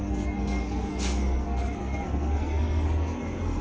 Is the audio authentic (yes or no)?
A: no